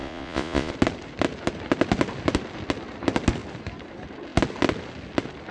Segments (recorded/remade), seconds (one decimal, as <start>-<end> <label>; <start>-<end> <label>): 0.0-0.7 remade; 0.7-5.5 recorded